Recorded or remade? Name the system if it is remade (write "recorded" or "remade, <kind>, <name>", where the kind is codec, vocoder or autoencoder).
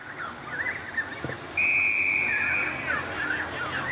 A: recorded